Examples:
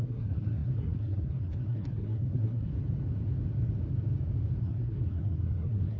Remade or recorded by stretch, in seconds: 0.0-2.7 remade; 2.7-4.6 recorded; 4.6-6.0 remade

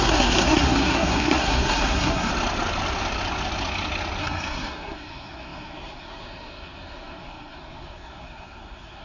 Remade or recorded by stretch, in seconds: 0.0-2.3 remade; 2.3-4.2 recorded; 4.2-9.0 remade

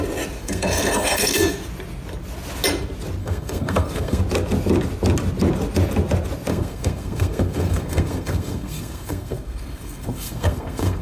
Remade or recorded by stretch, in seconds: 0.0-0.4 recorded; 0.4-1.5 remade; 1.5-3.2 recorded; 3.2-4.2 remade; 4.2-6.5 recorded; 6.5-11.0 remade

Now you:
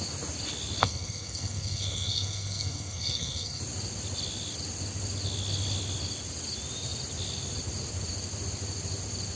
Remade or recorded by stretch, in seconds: 0.0-0.8 recorded; 0.8-3.6 remade; 3.6-9.4 recorded

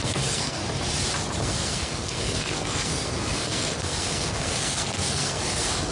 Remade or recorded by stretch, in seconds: 0.0-0.6 remade; 0.6-1.4 recorded; 1.4-5.9 remade